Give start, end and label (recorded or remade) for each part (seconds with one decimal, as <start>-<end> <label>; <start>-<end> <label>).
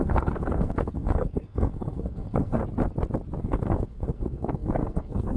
0.0-2.6 remade; 2.6-3.4 recorded; 3.4-5.4 remade